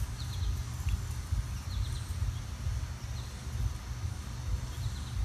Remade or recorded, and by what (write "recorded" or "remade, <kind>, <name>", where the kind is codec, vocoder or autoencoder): recorded